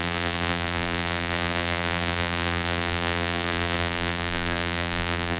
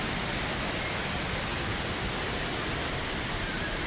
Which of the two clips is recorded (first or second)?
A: second